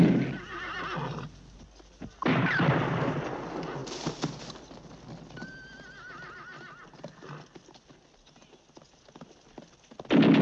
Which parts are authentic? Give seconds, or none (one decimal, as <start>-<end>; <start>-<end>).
0.0-10.4